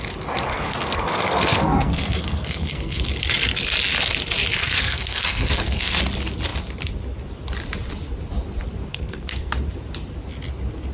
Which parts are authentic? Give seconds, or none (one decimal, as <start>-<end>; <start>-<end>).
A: 0.0-0.5; 3.0-4.6; 6.0-8.9; 9.5-10.9